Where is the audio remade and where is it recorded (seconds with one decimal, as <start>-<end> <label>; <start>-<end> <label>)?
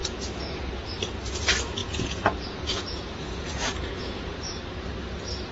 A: 0.0-0.7 remade; 0.7-1.8 recorded; 1.8-4.6 remade; 4.6-5.5 recorded